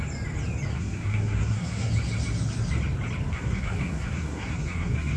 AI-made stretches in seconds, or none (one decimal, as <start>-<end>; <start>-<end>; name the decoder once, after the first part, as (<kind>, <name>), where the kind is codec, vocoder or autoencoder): 0.7-1.9 (codec, SNAC); 3.3-5.2